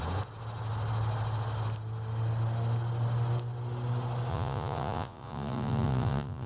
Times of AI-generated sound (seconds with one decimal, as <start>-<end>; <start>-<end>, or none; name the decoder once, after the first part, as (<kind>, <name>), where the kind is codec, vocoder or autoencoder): 4.3-6.5 (vocoder, Vocos)